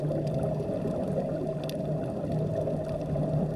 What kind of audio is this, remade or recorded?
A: recorded